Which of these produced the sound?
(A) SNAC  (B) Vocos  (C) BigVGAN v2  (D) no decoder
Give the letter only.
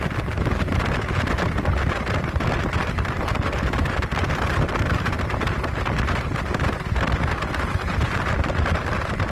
D